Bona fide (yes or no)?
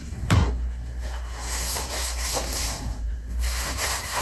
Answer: no